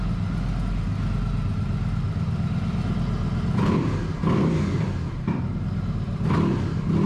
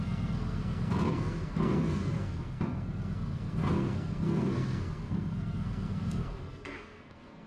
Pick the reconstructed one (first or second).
second